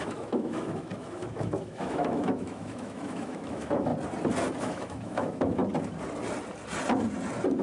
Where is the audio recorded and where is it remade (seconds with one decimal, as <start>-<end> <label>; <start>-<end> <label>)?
0.0-3.9 remade; 3.9-4.6 recorded; 4.6-5.6 remade; 5.6-7.6 recorded